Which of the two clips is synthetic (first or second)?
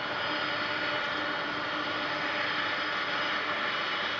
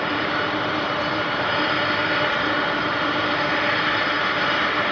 second